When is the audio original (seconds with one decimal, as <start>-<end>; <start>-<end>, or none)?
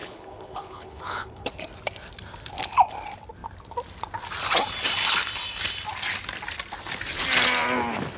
1.5-8.2